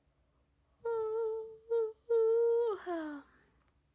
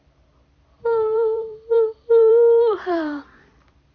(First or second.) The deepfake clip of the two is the second